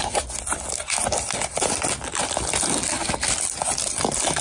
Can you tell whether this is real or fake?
real